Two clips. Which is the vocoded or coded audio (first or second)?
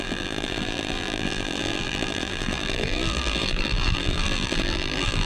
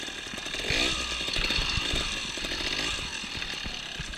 first